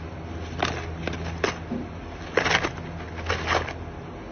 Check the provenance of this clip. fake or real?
real